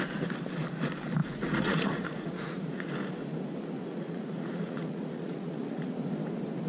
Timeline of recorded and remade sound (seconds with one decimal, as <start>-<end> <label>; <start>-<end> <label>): 0.0-1.2 recorded; 1.2-2.9 remade; 2.9-3.8 recorded; 3.8-6.0 remade; 6.0-6.7 recorded